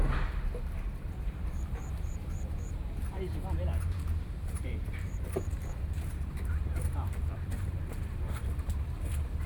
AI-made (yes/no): yes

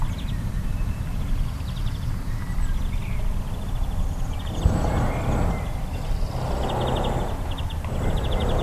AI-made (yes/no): no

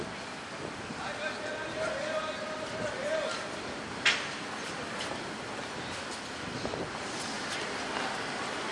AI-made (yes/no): no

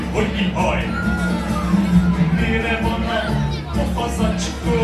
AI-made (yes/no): no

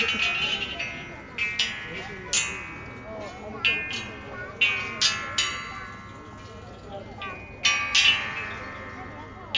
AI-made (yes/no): no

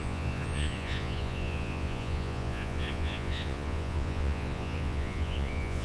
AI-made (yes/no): yes